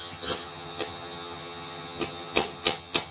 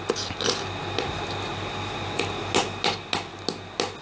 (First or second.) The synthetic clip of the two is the first